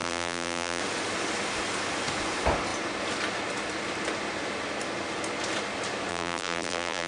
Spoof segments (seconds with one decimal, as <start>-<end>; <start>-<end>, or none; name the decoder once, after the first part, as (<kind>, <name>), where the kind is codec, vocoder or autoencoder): 0.0-0.8 (vocoder, BigVGAN v2); 6.1-7.1

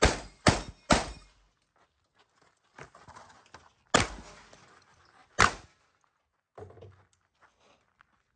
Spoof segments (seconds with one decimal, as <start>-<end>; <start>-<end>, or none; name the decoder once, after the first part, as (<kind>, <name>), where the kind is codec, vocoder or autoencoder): none

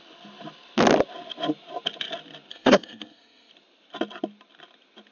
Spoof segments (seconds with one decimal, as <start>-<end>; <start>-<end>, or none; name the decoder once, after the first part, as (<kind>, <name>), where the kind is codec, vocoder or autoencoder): 2.5-3.5 (codec, SNAC)

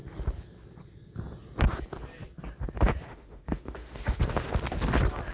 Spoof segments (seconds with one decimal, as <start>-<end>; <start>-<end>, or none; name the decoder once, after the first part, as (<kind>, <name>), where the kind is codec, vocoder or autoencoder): 3.1-4.2 (autoencoder, DAC-VAE)

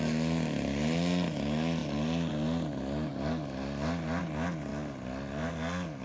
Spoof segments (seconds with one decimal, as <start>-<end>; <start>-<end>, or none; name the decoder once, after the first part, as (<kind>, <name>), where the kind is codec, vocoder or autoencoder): none

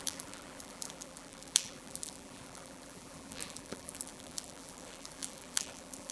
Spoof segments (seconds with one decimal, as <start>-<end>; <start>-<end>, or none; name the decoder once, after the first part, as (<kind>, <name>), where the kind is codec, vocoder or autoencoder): 0.0-6.1 (vocoder, BigVGAN v2)

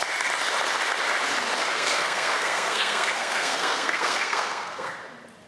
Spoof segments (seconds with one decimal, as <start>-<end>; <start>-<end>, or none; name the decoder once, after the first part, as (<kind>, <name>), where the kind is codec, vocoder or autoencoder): 1.6-4.9 (codec, SNAC)

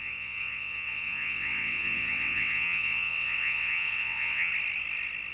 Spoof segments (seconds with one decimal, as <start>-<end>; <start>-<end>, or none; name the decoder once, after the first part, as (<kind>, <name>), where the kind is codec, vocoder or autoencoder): 0.0-4.5 (vocoder, WaveNeXt)